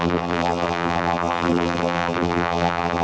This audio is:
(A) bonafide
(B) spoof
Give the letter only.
B